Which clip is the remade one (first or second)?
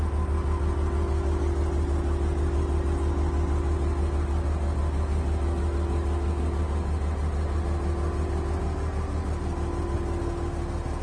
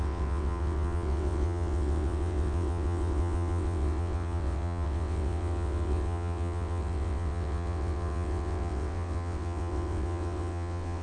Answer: second